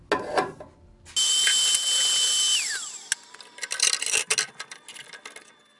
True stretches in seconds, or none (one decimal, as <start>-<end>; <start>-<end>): 0.0-5.8